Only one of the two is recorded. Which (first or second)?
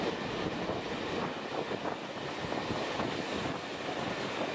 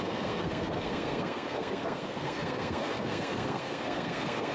first